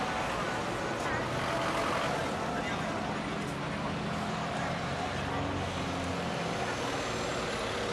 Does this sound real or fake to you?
real